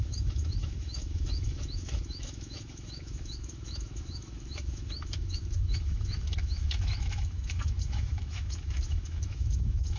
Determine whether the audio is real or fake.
fake